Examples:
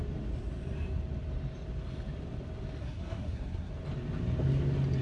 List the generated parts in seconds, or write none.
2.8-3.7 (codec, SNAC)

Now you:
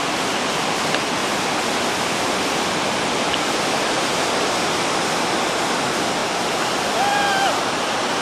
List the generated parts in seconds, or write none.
none

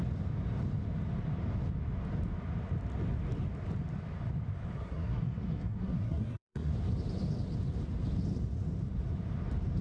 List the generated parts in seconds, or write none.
4.7-6.7 (codec, SNAC)

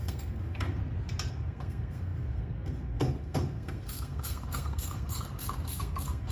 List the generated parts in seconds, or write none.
0.0-0.8 (codec, SNAC); 1.3-6.3

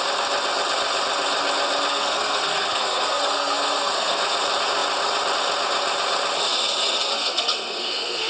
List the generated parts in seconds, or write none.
1.9-4.2 (codec, SNAC); 7.1-8.3